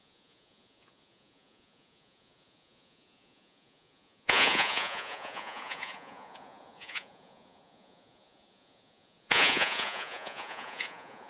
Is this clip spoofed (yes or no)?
yes